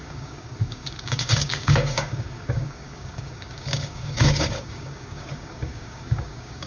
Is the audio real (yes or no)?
no